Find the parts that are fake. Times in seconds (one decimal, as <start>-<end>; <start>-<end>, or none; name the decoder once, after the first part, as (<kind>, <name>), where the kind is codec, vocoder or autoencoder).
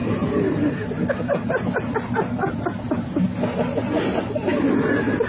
0.0-3.2 (vocoder, BigVGAN v2); 3.8-4.5